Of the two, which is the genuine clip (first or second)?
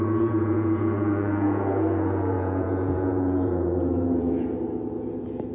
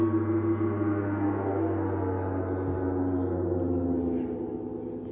second